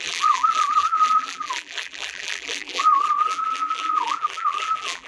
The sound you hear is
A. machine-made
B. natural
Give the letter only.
A